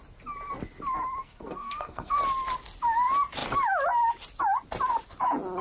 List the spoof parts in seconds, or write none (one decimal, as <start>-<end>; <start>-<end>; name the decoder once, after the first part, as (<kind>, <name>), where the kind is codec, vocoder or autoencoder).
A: 1.2-2.2 (codec, SNAC)